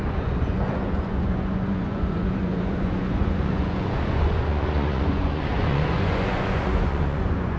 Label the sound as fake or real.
fake